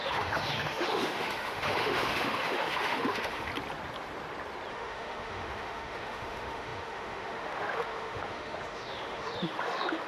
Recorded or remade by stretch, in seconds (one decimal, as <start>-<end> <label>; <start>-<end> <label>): 0.0-3.5 remade; 3.5-4.7 recorded; 4.7-10.1 remade